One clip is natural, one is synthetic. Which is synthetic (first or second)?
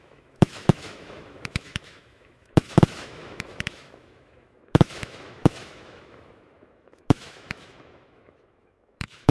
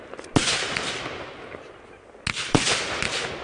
first